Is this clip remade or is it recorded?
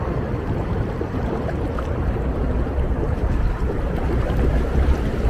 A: remade